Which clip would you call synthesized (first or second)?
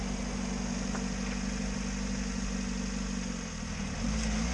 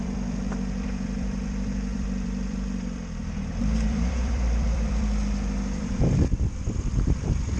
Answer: second